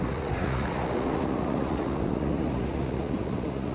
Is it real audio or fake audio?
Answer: fake